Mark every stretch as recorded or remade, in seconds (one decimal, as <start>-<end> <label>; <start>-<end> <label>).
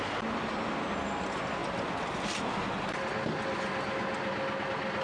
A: 0.0-5.0 recorded